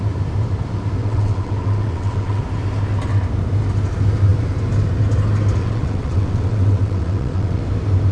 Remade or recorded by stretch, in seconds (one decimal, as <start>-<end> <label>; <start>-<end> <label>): 0.0-1.0 recorded; 1.0-2.4 remade; 2.4-5.6 recorded; 5.6-7.6 remade; 7.6-8.1 recorded